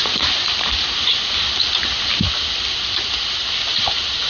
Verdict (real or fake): real